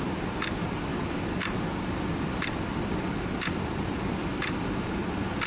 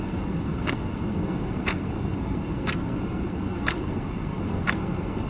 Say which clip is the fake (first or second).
second